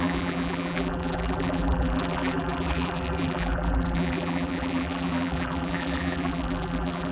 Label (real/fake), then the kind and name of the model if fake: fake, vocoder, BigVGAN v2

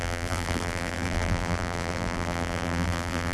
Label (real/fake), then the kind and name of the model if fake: fake, vocoder, BigVGAN v2